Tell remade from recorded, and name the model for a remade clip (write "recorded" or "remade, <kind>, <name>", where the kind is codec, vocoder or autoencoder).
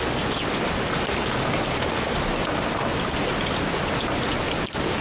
recorded